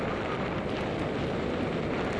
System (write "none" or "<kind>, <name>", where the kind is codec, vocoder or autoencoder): none